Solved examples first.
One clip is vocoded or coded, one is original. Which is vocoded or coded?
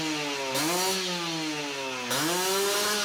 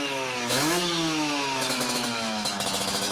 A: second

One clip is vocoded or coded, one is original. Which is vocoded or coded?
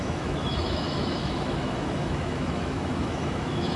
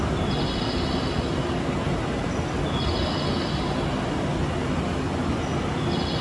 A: first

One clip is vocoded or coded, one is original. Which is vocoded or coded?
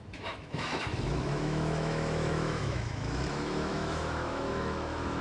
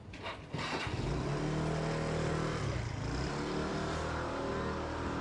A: first